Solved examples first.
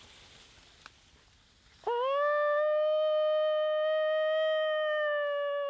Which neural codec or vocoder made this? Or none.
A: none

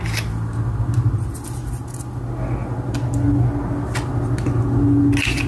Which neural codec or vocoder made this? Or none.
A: none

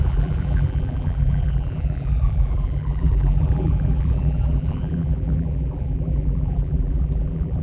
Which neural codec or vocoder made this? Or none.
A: vocoder, BigVGAN v2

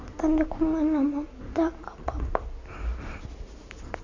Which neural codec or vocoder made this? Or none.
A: none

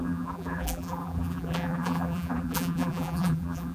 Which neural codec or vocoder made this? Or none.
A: vocoder, BigVGAN v2